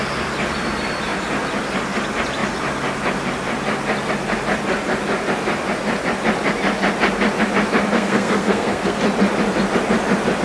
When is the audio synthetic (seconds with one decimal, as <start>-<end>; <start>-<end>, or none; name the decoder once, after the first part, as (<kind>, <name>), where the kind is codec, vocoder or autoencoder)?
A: 7.9-9.0 (codec, SNAC)